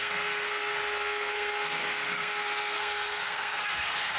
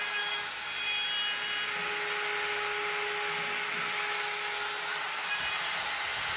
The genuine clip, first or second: second